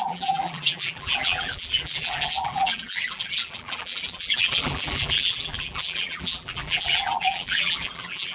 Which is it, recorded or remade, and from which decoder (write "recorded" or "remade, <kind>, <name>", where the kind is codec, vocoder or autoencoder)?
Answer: remade, vocoder, BigVGAN v2